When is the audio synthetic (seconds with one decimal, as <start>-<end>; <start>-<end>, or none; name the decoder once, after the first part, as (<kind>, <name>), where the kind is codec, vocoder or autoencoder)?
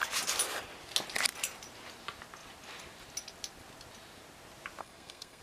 4.8-5.4 (codec, SNAC)